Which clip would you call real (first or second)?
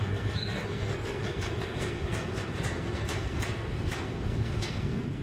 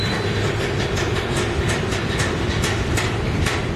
second